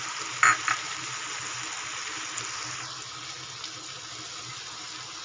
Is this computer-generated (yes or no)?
no